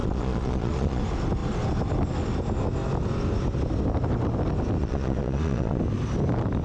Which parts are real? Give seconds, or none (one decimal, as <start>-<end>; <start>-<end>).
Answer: 1.0-4.8; 5.8-6.6